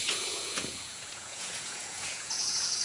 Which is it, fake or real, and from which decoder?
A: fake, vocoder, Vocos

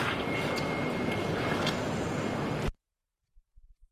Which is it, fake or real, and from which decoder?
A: fake, vocoder, BigVGAN v2